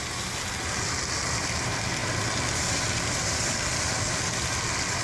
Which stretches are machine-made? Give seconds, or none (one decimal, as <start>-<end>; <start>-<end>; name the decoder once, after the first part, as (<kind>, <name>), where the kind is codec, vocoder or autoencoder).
none